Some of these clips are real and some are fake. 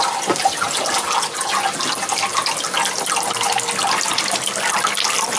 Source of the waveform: real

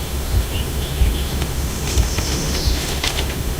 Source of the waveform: fake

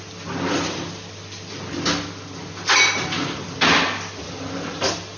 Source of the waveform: real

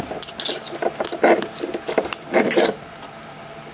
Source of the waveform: real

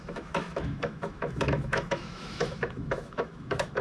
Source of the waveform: fake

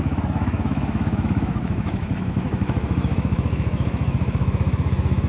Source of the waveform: fake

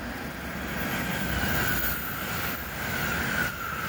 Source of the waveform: real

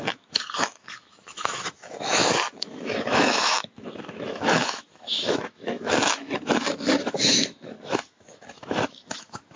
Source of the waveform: fake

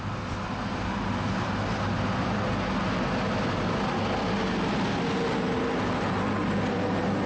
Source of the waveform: real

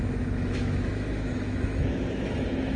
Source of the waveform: fake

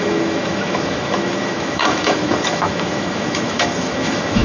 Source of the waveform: fake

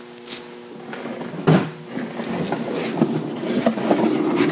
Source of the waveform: real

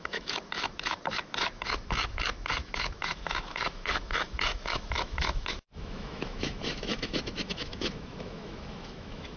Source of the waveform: fake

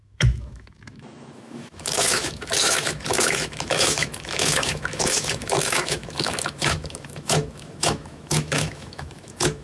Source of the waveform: fake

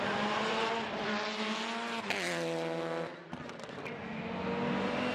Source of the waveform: real